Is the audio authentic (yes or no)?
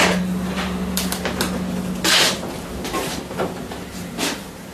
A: yes